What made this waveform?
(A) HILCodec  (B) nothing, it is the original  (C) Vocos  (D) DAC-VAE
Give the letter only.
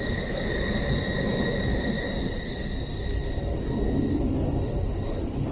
B